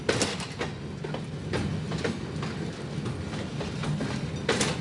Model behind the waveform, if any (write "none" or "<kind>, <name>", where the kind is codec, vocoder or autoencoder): none